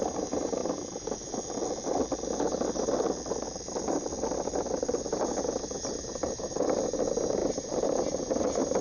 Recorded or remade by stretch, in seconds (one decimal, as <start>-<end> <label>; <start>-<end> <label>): 0.0-8.8 recorded